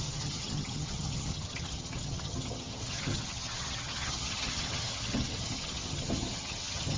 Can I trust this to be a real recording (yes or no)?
no